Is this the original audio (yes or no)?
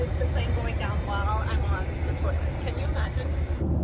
no